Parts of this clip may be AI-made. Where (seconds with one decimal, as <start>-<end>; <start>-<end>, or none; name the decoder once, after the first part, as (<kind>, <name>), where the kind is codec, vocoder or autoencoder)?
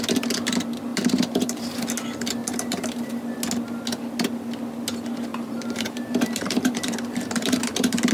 0.9-1.8 (vocoder, BigVGAN v2); 2.4-3.2; 5.3-8.1